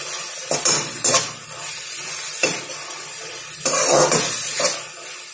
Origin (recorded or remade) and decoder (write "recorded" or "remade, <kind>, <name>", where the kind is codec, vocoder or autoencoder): recorded